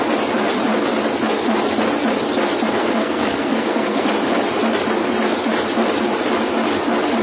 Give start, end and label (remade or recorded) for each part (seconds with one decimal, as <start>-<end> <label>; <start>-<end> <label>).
0.0-2.8 recorded; 2.8-4.1 remade; 4.1-7.2 recorded